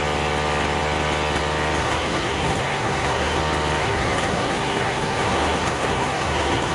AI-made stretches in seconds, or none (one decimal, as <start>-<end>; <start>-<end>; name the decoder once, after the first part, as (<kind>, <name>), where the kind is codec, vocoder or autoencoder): 1.8-3.4 (codec, SNAC); 3.8-6.7

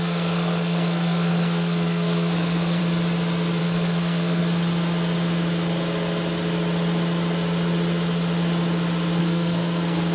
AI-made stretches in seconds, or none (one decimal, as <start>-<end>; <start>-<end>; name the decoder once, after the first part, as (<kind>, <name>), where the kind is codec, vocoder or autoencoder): 0.0-2.8 (codec, SNAC); 3.6-4.4; 9.2-10.1

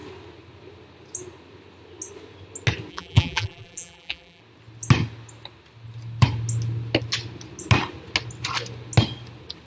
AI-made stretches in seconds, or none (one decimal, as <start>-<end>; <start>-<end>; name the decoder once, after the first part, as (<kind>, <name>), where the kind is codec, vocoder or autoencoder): 2.9-4.4 (vocoder, BigVGAN v2)

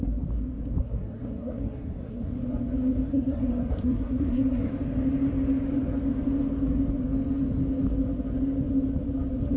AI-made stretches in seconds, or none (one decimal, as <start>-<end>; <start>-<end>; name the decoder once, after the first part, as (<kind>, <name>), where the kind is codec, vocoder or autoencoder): 0.8-2.4 (codec, SNAC); 3.1-4.7

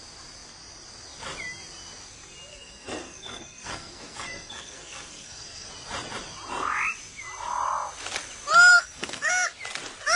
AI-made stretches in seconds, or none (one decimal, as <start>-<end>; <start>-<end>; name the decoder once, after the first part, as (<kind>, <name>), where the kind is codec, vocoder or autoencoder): 2.5-5.7 (codec, SNAC); 8.7-9.3

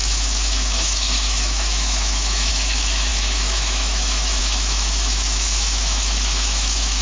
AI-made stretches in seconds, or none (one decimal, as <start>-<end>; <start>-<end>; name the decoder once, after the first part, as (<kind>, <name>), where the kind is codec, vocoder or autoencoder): 0.0-7.0 (autoencoder, DAC-VAE)

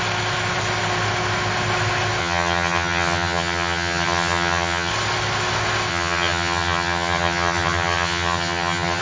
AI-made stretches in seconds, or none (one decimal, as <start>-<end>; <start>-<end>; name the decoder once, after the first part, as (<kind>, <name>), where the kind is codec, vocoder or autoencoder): 2.2-4.9 (vocoder, HiFi-GAN); 5.9-9.0